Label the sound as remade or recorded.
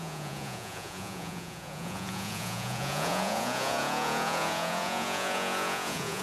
remade